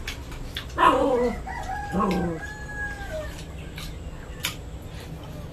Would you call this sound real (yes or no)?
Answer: yes